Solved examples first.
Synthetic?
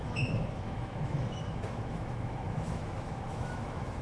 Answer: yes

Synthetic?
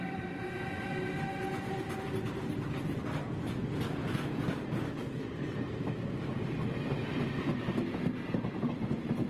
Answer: no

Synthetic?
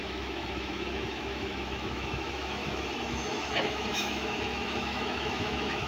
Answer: yes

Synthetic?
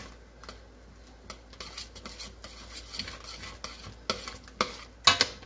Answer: no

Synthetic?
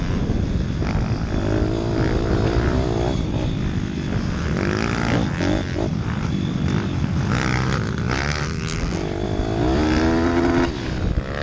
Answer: no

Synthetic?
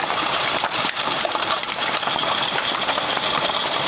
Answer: yes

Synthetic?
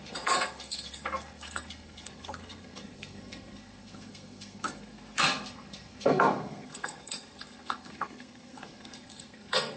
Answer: yes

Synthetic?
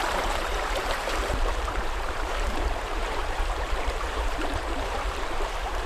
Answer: yes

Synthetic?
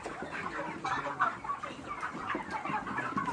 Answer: no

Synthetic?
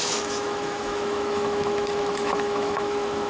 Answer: yes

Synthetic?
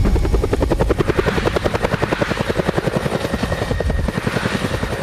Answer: no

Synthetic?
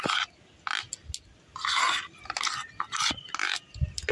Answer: no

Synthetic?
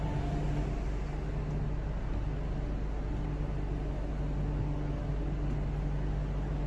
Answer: no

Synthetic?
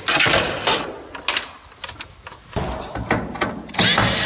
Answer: no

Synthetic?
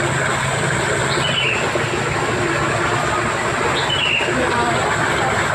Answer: no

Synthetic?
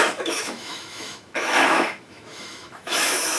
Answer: yes